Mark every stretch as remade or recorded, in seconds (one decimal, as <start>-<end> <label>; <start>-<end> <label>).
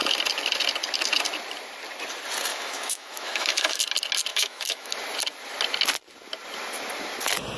0.0-2.5 recorded; 2.5-3.8 remade; 3.8-4.3 recorded; 4.3-4.9 remade; 4.9-7.6 recorded